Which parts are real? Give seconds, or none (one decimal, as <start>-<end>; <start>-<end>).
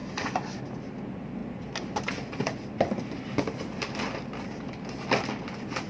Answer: 0.0-5.9